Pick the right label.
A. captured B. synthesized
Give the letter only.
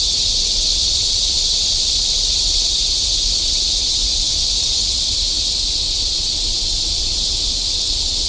B